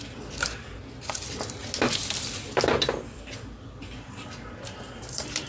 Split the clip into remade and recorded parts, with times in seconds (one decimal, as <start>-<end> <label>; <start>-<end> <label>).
0.0-1.6 remade; 1.6-3.9 recorded; 3.9-5.5 remade